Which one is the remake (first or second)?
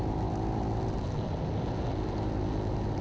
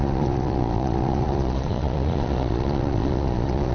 second